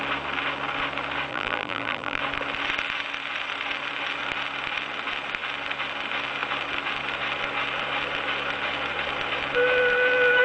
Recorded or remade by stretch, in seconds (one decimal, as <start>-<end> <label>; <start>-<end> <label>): 0.0-1.3 recorded; 1.3-2.2 remade; 2.2-10.4 recorded